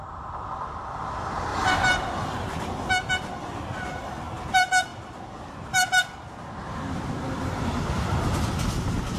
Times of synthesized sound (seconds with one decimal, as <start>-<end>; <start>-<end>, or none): 1.5-2.1

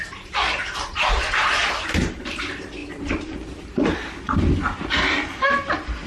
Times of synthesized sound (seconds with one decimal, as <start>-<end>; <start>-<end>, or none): 0.0-1.6; 2.2-2.8; 4.4-6.1

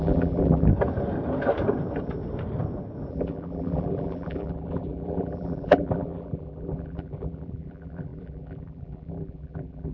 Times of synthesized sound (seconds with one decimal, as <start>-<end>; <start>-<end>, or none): 0.0-0.7; 3.1-9.9

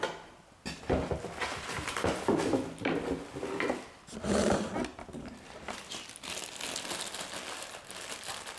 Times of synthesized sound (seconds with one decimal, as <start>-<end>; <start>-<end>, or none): none

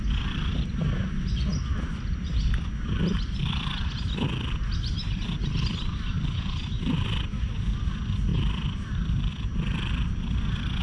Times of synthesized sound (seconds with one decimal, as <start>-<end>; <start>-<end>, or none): none

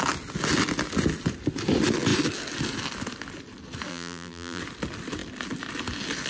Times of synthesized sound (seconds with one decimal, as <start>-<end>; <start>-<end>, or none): 3.9-4.6